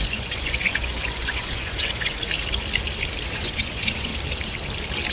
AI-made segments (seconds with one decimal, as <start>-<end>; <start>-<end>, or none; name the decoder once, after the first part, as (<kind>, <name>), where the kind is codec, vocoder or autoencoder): 0.0-2.2 (vocoder, Vocos); 3.3-4.1